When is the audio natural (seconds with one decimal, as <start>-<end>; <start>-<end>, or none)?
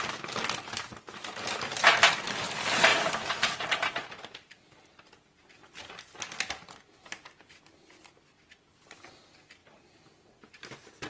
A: 0.0-11.1